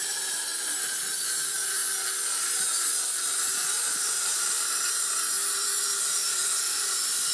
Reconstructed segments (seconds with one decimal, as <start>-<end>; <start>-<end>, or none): 0.0-0.5; 1.1-1.8; 4.0-5.4; 6.0-7.3